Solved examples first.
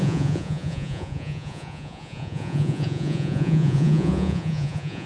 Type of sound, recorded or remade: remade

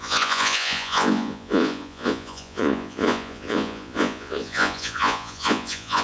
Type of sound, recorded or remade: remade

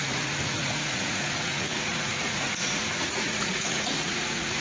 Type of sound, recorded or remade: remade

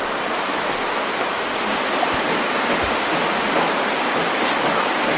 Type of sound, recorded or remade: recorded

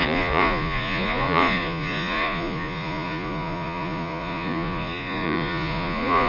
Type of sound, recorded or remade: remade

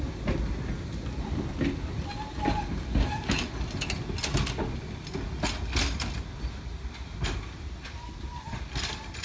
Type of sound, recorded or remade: recorded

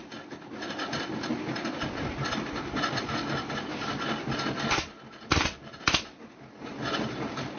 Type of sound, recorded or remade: recorded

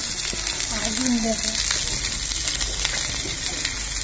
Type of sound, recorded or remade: recorded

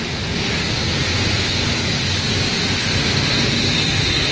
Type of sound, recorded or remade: recorded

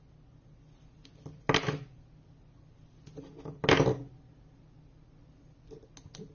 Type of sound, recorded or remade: recorded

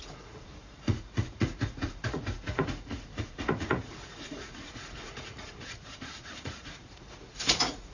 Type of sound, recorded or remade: remade